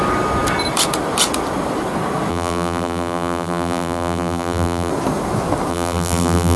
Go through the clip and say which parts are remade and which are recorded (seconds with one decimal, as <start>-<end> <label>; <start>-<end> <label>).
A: 0.0-2.3 recorded; 2.3-4.9 remade; 4.9-5.7 recorded; 5.7-6.6 remade